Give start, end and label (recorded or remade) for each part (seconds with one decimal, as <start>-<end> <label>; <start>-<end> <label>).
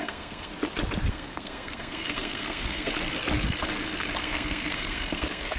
0.0-0.5 remade; 0.5-1.1 recorded; 1.1-2.9 remade; 2.9-4.2 recorded; 4.2-5.6 remade